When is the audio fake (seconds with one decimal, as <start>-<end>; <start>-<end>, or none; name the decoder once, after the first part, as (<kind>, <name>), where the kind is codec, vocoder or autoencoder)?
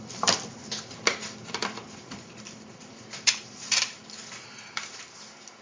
0.0-4.0 (vocoder, BigVGAN v2)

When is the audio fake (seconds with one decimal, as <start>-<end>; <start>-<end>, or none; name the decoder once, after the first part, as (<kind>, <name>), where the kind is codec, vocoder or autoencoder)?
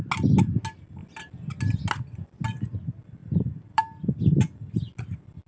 3.2-3.8 (vocoder, BigVGAN v2)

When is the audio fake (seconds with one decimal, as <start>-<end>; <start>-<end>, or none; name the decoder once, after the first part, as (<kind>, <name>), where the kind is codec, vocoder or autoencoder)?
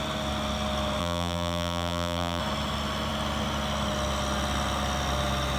1.0-2.4 (vocoder, BigVGAN v2)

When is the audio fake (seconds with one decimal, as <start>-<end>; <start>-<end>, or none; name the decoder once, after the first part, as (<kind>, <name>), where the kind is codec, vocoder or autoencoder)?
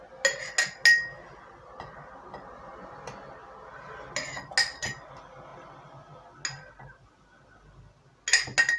none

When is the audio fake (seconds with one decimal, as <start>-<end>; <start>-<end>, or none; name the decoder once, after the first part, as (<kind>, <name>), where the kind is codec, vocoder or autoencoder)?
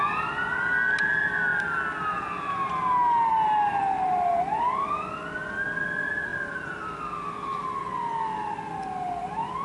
3.3-3.8 (vocoder, BigVGAN v2); 6.3-7.0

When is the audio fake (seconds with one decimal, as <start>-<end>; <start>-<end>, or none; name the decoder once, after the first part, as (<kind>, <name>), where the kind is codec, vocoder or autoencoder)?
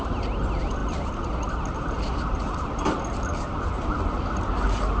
none